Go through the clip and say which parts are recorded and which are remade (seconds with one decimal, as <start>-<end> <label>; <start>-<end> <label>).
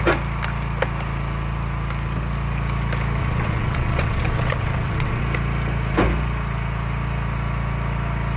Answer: 0.0-3.2 recorded; 3.2-5.2 remade; 5.2-8.4 recorded